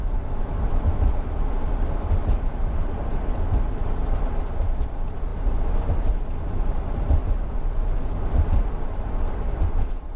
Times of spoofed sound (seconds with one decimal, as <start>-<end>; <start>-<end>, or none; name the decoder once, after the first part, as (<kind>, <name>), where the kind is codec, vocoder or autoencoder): none